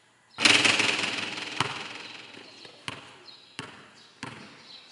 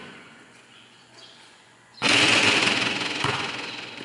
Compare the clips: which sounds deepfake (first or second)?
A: second